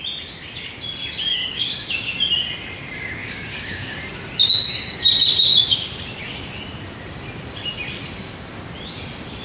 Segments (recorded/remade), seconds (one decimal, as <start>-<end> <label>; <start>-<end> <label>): 0.0-1.3 recorded; 1.3-2.1 remade; 2.1-3.2 recorded; 3.2-4.0 remade; 4.0-5.5 recorded; 5.5-6.1 remade; 6.1-9.4 recorded